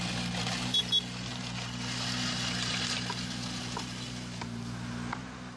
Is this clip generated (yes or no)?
no